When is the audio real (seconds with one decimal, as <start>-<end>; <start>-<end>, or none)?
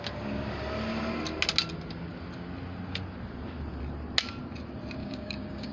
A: 0.0-5.0